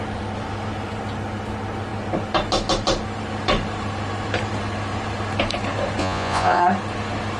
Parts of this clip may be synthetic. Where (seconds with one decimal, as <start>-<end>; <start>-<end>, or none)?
6.0-6.6